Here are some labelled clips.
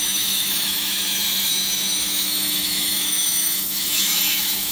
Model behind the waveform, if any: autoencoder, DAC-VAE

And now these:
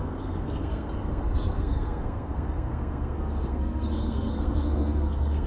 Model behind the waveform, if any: codec, SNAC